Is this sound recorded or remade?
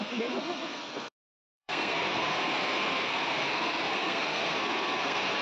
remade